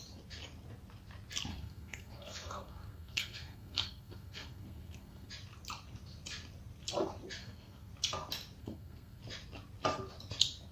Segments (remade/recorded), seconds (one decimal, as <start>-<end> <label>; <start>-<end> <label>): 0.0-1.5 recorded; 1.5-5.3 remade; 5.3-7.4 recorded; 7.4-7.9 remade; 7.9-8.6 recorded; 8.6-9.2 remade; 9.2-10.7 recorded